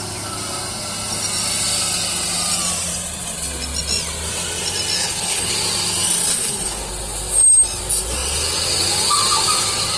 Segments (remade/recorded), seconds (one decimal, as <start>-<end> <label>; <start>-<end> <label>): 0.0-5.0 recorded; 5.0-5.5 remade; 5.5-6.3 recorded; 6.3-6.9 remade; 6.9-10.0 recorded